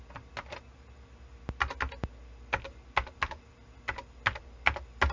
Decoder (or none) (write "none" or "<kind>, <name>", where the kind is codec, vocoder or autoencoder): none